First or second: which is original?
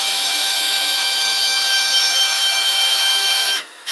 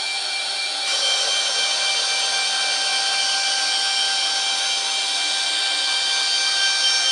second